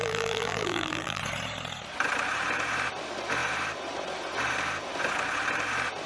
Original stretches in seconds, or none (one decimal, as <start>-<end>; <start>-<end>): 1.2-6.1